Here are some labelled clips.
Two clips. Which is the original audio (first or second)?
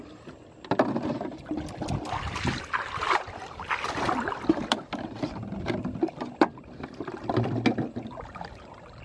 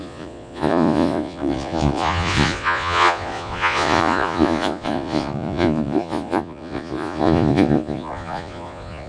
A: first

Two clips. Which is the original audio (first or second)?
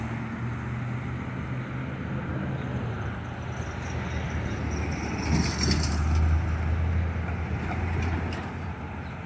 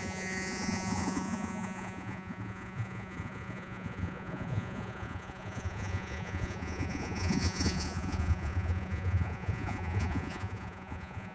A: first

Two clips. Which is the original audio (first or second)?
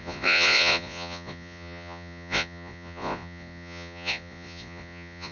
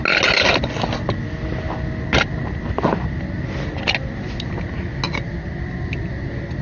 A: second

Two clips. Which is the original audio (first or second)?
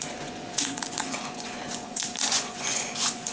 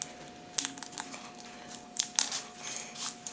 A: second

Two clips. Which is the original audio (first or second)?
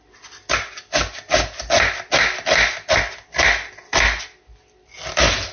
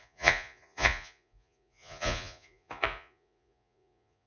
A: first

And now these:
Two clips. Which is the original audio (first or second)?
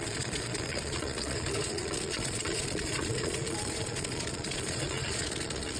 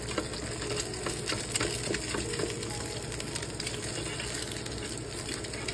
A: second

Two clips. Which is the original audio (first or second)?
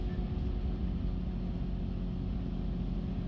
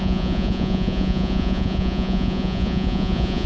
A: first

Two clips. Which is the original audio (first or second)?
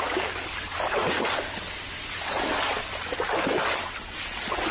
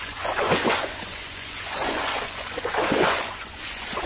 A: first